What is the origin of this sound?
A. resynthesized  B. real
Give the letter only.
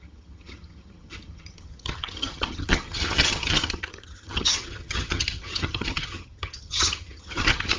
A